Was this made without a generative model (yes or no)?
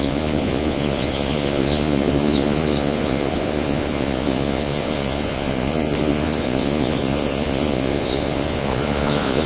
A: no